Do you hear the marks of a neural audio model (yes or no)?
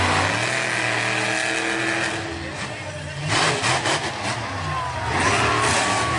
no